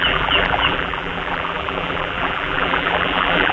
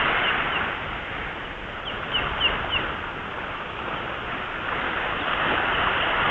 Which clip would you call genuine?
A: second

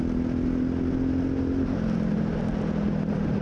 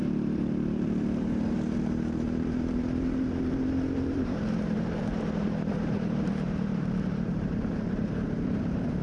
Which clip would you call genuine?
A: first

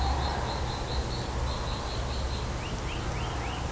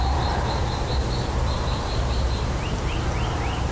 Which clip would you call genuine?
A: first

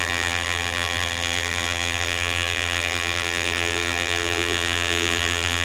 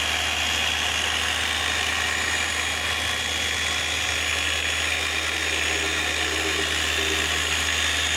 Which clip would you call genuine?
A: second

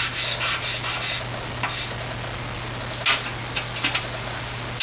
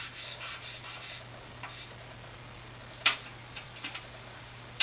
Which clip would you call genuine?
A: first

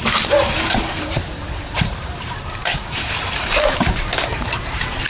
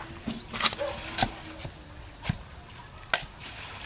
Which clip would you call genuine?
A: second